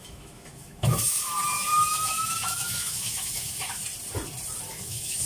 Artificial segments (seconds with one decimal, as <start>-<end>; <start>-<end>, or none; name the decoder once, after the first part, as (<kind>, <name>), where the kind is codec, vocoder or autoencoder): 0.0-3.8 (autoencoder, DAC-VAE); 4.7-5.3